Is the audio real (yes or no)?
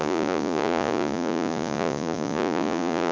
no